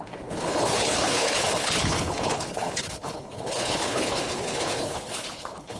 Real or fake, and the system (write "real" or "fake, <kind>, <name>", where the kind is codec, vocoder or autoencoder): fake, codec, HILCodec